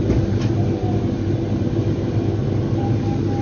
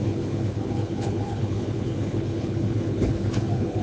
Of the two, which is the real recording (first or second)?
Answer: first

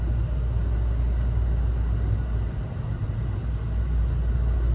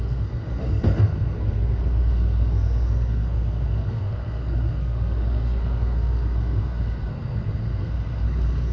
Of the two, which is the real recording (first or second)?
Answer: first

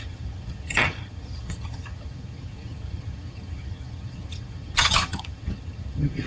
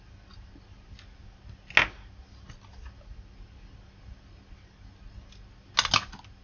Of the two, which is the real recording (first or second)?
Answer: second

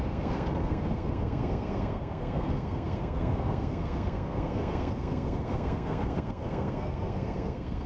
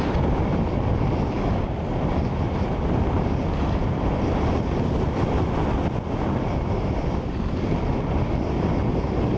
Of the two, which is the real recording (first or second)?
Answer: second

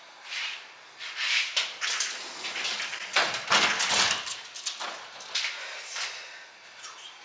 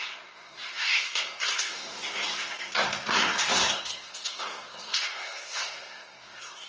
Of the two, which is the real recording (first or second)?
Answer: first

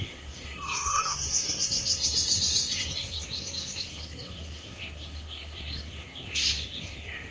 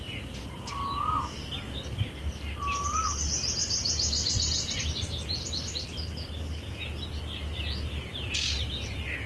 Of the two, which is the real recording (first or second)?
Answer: second